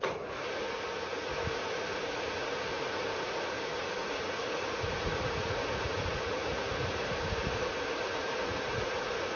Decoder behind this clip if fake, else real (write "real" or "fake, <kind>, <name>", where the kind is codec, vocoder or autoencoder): fake, vocoder, Vocos